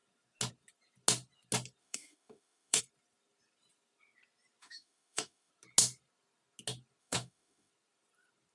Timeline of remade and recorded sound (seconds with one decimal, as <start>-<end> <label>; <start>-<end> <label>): 0.0-1.8 recorded; 1.8-2.8 remade; 2.8-4.6 recorded; 4.6-5.5 remade; 5.5-7.0 recorded; 7.0-7.7 remade; 7.7-8.5 recorded